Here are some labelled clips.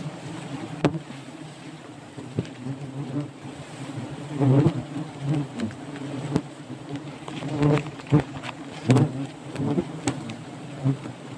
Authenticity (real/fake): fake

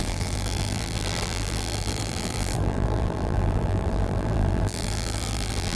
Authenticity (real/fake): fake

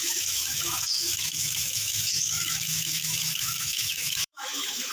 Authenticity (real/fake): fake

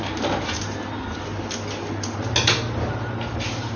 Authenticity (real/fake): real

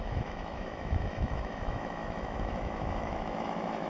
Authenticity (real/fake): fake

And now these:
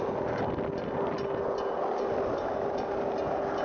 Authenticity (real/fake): real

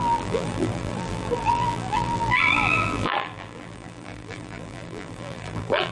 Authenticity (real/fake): fake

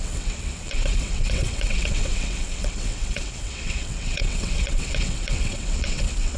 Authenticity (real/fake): fake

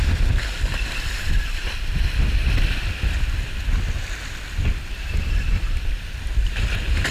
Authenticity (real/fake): fake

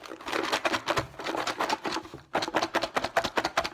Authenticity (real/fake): real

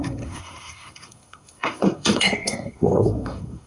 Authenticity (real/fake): fake